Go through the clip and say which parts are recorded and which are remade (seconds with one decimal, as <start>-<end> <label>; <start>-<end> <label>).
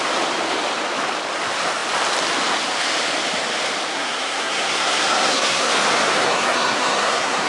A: 0.0-3.9 recorded; 3.9-5.7 remade; 5.7-6.2 recorded; 6.2-7.5 remade